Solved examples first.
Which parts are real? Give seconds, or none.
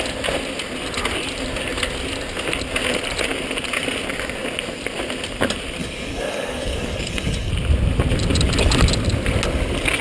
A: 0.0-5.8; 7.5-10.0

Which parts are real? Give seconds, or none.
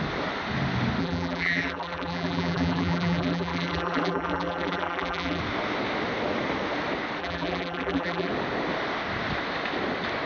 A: 0.0-1.0; 5.4-7.2; 8.3-10.3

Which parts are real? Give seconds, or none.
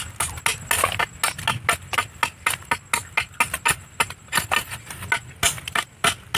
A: 0.0-6.4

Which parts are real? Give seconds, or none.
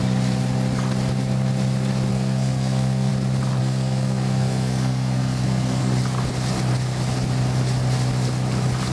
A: 0.0-2.1; 3.1-3.6; 5.9-8.9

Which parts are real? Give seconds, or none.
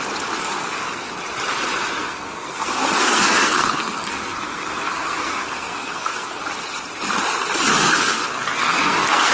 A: 0.0-0.4; 1.1-2.0; 6.4-7.7